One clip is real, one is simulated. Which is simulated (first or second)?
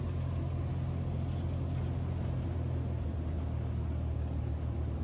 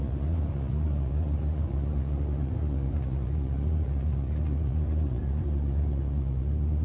second